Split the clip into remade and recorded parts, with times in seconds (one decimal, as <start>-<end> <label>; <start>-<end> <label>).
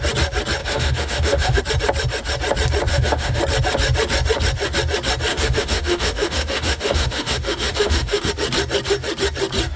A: 0.0-0.6 recorded; 0.6-1.6 remade; 1.6-2.9 recorded; 2.9-3.4 remade; 3.4-5.3 recorded; 5.3-8.3 remade; 8.3-9.8 recorded